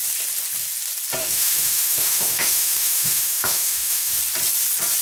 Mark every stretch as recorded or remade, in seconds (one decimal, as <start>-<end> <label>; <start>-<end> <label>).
0.0-1.2 recorded; 1.2-4.2 remade; 4.2-5.0 recorded